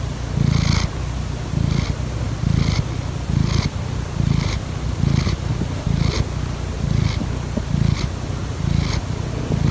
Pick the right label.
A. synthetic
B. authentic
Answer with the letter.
B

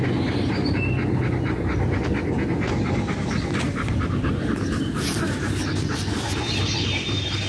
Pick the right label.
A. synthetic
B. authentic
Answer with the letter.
B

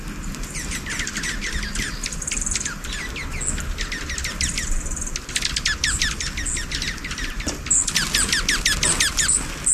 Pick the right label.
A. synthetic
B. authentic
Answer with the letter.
B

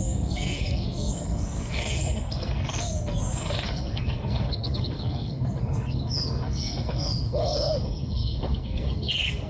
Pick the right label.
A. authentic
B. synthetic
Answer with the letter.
B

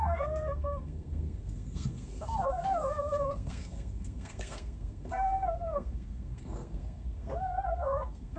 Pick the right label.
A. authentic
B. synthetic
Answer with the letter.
B